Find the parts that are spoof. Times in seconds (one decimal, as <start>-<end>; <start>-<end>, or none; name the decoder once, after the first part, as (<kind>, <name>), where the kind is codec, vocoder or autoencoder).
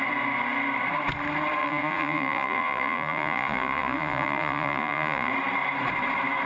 1.6-5.3 (vocoder, Vocos)